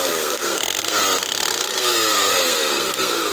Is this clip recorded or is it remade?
remade